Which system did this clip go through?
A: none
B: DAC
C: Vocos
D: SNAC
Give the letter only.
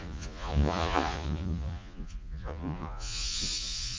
C